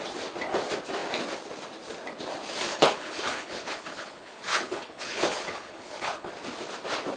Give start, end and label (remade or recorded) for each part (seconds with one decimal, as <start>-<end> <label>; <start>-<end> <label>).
0.0-2.7 recorded; 2.7-6.3 remade; 6.3-7.2 recorded